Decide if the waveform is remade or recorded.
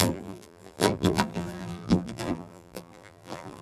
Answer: remade